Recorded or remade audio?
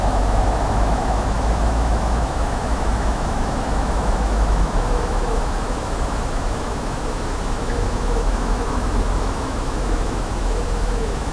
remade